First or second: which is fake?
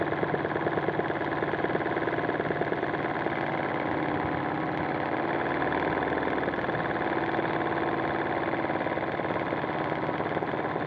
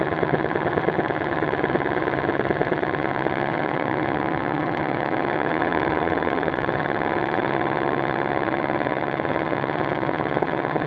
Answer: second